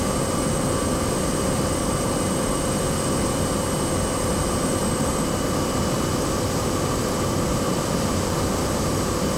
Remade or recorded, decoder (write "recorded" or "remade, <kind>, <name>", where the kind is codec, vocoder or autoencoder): recorded